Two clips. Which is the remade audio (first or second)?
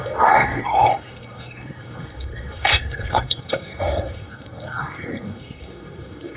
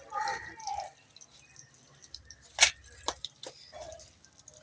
first